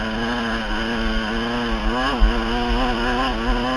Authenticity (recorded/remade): recorded